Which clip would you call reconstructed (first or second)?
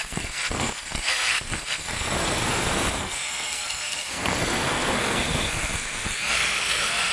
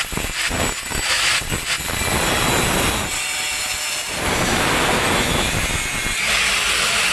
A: first